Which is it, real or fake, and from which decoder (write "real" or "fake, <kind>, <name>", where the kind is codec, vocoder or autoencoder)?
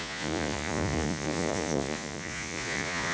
fake, vocoder, Vocos